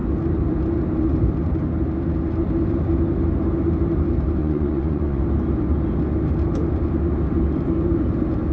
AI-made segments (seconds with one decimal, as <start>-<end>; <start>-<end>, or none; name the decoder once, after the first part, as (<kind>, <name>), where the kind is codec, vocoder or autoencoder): 4.4-5.2 (vocoder, Vocos)

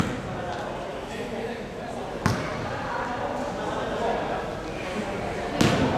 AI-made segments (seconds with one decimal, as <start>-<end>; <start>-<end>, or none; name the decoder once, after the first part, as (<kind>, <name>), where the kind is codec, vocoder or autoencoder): 0.9-1.8 (autoencoder, DAC-VAE)

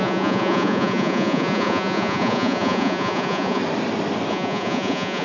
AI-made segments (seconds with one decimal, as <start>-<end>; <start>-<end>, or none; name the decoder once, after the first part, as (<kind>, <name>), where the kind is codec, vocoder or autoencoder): 0.0-3.6 (vocoder, Vocos); 4.3-5.2

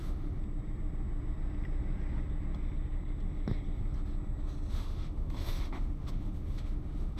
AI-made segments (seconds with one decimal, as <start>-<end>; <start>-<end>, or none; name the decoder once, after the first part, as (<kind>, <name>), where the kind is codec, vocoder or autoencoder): 0.0-0.4 (autoencoder, DAC-VAE); 4.7-7.2

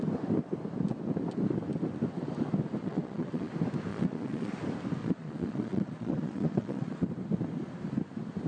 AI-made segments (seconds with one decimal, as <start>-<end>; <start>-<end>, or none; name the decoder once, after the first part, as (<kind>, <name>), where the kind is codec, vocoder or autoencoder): 2.8-3.5 (vocoder, Vocos); 3.9-4.5; 5.0-7.1

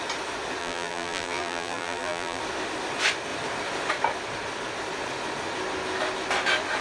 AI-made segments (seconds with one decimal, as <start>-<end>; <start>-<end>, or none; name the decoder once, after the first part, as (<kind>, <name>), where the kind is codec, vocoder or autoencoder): 0.6-2.4 (vocoder, BigVGAN v2)

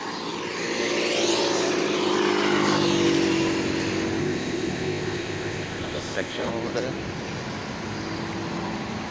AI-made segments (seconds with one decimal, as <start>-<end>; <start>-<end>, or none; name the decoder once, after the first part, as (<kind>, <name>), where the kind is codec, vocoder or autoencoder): 4.2-6.5 (codec, ZipCodec)